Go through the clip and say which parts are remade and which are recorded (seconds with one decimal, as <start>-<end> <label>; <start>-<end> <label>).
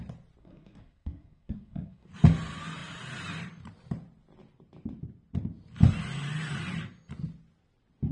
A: 0.0-0.4 recorded; 0.4-2.1 remade; 2.1-8.1 recorded